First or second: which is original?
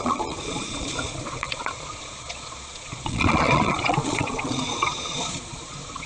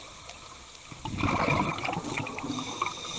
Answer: second